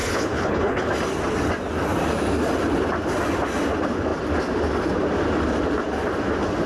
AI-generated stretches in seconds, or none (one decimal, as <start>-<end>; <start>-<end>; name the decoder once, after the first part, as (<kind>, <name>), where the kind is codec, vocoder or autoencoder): 0.0-0.9 (codec, HILCodec)